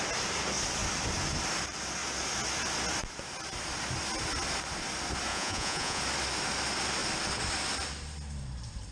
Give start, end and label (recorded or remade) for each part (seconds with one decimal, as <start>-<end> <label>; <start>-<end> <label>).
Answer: 0.0-5.3 recorded; 5.3-6.0 remade; 6.0-8.9 recorded